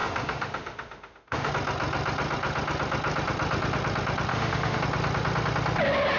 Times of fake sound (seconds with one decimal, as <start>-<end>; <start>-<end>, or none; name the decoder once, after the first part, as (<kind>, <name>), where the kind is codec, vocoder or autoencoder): 0.0-1.5 (autoencoder, DAC-VAE); 4.3-4.8